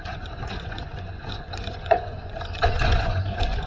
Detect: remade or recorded remade